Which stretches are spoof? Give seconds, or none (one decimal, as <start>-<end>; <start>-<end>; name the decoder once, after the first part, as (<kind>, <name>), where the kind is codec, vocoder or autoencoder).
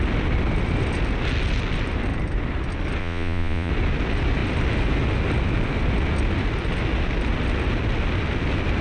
3.0-3.7 (vocoder, Vocos)